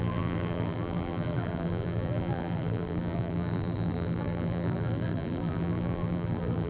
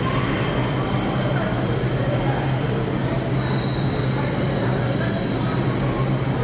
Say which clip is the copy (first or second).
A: first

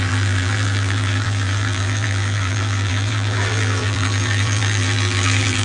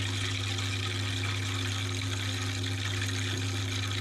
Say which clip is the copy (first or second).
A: first